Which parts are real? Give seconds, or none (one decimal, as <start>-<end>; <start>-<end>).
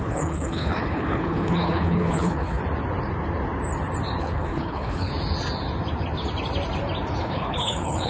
2.6-4.2; 5.1-7.2